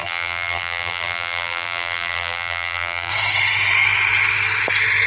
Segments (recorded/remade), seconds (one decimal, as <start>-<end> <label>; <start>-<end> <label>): 0.0-3.1 remade; 3.1-5.1 recorded